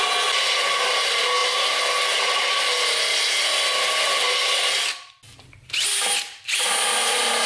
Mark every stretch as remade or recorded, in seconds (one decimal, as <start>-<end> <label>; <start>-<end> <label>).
0.0-7.5 recorded